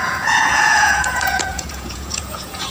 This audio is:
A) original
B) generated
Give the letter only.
B